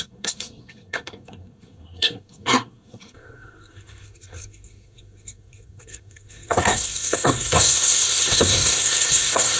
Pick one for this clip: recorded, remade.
remade